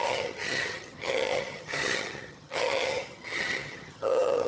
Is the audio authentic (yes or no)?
no